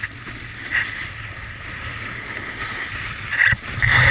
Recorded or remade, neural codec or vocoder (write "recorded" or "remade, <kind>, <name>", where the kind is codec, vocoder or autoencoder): recorded